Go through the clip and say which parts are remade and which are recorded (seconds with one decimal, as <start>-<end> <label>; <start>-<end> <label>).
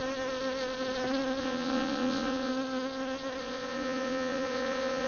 0.0-1.4 recorded; 1.4-2.5 remade; 2.5-3.4 recorded; 3.4-5.1 remade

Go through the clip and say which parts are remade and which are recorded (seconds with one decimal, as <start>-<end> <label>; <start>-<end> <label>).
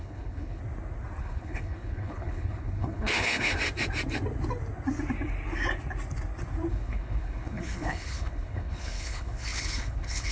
0.0-0.6 remade; 0.6-1.2 recorded; 1.2-3.5 remade; 3.5-6.7 recorded; 6.7-10.3 remade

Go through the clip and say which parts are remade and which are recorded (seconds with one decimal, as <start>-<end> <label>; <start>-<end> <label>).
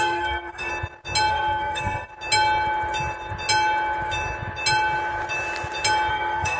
0.0-0.7 remade; 0.7-1.3 recorded; 1.3-2.1 remade; 2.1-6.1 recorded; 6.1-6.6 remade